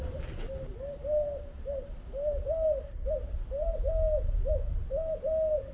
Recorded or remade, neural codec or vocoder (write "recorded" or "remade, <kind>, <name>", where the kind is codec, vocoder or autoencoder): recorded